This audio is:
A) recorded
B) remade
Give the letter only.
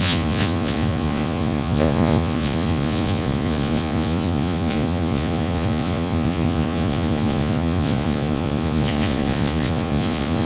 B